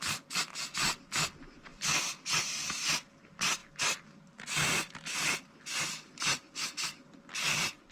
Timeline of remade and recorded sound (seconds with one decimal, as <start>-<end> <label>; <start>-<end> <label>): 0.0-7.9 recorded